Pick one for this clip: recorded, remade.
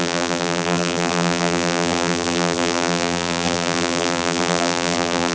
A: remade